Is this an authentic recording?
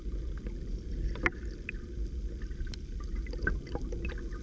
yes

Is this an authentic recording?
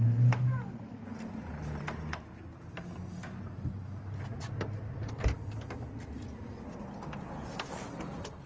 yes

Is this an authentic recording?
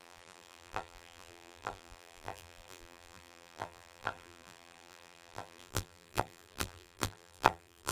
no